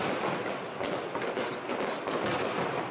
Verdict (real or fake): real